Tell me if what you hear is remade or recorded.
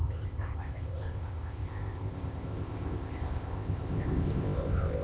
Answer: remade